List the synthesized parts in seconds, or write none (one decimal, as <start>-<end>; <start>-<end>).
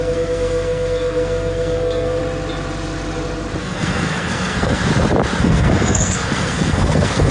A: 0.0-2.2; 3.6-4.9; 5.4-7.3